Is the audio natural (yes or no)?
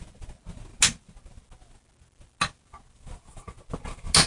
yes